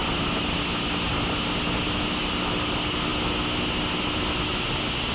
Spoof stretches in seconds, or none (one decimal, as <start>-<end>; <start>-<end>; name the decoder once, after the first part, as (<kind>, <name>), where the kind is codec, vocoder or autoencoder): 2.2-3.1 (vocoder, BigVGAN v2); 4.3-5.1